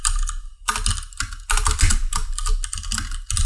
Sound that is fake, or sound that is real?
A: real